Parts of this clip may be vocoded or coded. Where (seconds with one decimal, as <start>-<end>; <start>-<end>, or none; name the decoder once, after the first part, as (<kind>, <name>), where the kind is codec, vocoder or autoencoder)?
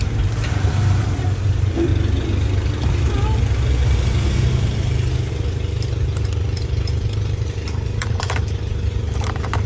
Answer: 0.0-1.9 (vocoder, BigVGAN v2); 5.3-9.7